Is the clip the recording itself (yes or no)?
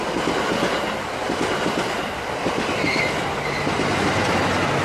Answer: yes